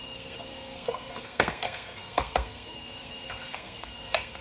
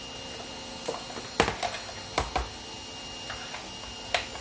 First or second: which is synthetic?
first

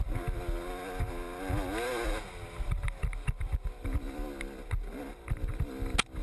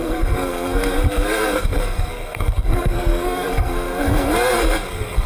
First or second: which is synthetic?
second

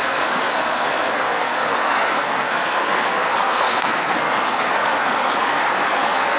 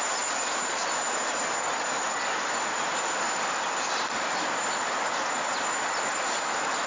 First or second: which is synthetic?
first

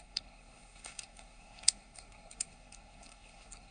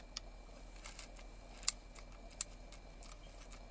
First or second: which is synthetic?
first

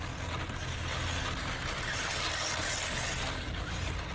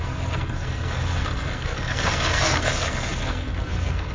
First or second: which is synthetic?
second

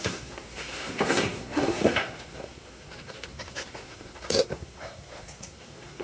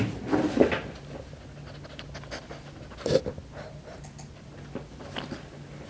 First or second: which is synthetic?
first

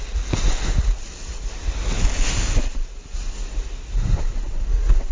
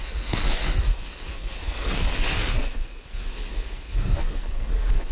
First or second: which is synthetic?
second